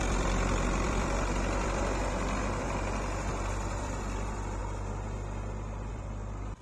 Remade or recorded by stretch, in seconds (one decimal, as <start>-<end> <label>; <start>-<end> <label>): 0.0-4.6 remade; 4.6-5.9 recorded; 5.9-6.6 remade